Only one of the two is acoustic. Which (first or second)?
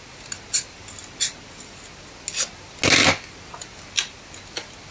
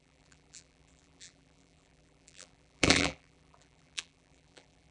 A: first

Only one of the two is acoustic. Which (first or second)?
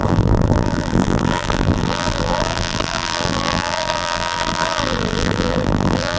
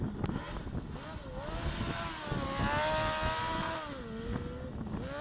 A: second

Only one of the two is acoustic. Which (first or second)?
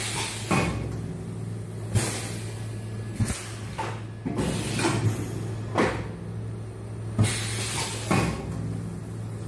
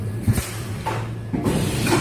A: first